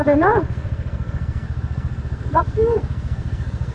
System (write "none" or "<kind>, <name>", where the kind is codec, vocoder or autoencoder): codec, SNAC